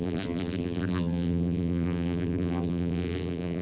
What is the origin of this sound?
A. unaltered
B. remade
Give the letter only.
B